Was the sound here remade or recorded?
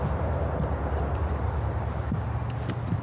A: recorded